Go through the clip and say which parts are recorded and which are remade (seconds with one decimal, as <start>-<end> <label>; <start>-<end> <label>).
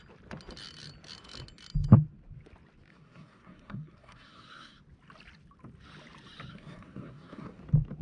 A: 0.0-2.9 recorded; 2.9-4.8 remade; 4.8-6.5 recorded; 6.5-7.6 remade; 7.6-8.0 recorded